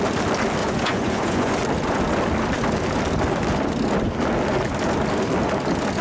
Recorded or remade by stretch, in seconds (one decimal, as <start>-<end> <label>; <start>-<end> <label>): 0.0-0.6 recorded; 0.6-1.5 remade; 1.5-6.0 recorded